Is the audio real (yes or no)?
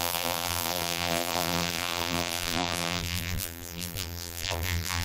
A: no